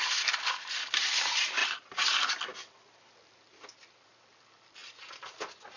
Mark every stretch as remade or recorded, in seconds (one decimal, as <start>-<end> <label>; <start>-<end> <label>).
0.0-1.6 recorded; 1.6-2.2 remade; 2.2-5.8 recorded